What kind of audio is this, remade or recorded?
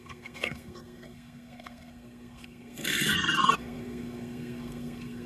remade